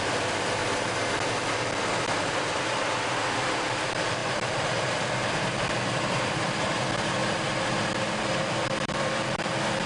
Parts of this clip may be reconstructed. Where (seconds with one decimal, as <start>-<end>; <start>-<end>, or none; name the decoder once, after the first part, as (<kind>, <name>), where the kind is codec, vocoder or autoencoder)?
0.0-0.6 (vocoder, BigVGAN v2); 2.0-7.2; 8.6-9.9